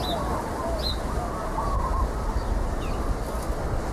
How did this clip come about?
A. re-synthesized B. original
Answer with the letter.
B